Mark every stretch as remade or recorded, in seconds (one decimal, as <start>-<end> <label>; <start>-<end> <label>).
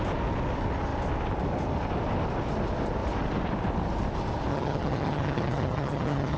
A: 0.0-4.5 recorded; 4.5-6.4 remade